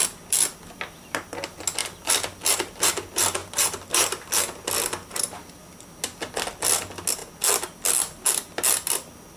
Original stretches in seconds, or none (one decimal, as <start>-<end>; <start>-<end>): 0.0-3.4; 4.3-9.4